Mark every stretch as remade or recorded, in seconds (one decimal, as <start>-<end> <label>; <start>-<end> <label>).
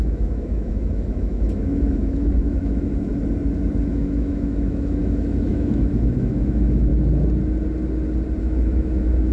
0.0-3.1 remade; 3.1-3.9 recorded; 3.9-6.9 remade; 6.9-8.4 recorded; 8.4-9.3 remade